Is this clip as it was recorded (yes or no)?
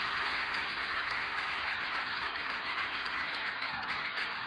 no